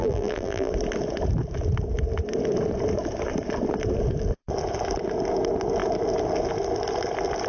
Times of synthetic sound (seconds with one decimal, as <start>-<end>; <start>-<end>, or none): 0.0-0.7